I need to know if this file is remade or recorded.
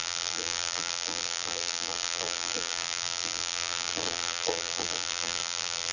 remade